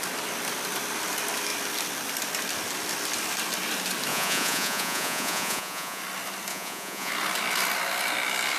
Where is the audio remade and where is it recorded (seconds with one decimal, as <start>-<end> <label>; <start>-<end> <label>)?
0.0-4.1 recorded; 4.1-6.0 remade; 6.0-6.5 recorded; 6.5-7.1 remade; 7.1-8.6 recorded